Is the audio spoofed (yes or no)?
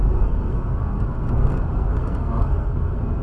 yes